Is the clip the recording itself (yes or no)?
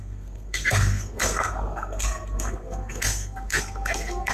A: no